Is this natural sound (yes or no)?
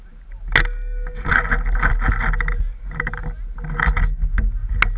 yes